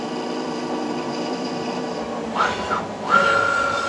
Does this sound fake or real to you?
fake